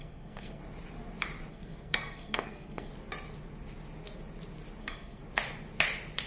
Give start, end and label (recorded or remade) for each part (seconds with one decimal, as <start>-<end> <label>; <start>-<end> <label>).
0.0-0.6 remade; 0.6-1.5 recorded; 1.5-2.9 remade; 2.9-4.8 recorded; 4.8-5.2 remade; 5.2-6.3 recorded